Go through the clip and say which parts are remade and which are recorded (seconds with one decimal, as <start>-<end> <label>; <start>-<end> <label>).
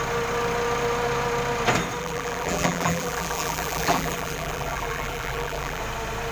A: 0.0-2.0 recorded; 2.0-5.8 remade; 5.8-6.3 recorded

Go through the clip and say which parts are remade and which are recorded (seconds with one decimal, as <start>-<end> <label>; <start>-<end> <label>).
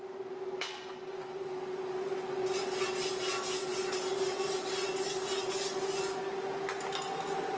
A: 0.0-7.6 recorded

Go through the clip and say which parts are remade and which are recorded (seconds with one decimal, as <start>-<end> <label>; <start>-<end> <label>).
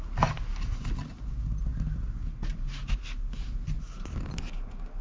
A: 0.0-5.0 recorded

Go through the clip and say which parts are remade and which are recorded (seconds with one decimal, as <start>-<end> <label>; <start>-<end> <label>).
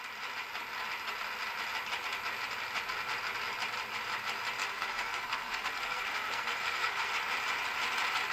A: 0.0-4.6 recorded; 4.6-7.1 remade; 7.1-8.3 recorded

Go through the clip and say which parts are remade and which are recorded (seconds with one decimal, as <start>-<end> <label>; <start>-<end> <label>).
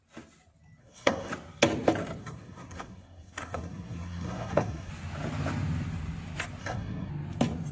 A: 0.0-0.8 recorded; 0.8-1.3 remade; 1.3-2.2 recorded; 2.2-4.9 remade; 4.9-6.6 recorded; 6.6-7.1 remade; 7.1-7.7 recorded